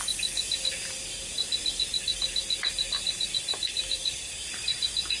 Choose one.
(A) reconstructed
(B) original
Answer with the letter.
B